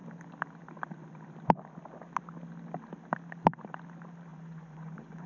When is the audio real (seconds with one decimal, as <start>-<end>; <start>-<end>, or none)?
0.0-4.3